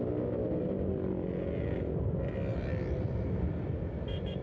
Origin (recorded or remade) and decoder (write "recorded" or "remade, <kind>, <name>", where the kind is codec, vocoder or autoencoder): recorded